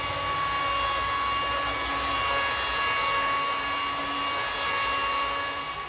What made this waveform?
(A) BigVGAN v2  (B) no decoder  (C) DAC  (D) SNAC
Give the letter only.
B